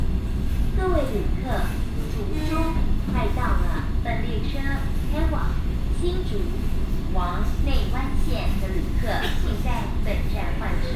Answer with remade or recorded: recorded